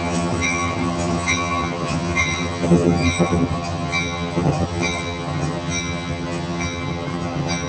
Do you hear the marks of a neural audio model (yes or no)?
yes